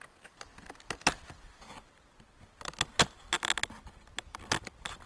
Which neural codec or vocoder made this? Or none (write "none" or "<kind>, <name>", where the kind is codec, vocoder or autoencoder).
none